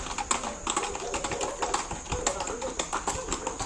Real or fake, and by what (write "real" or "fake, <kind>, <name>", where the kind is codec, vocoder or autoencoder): real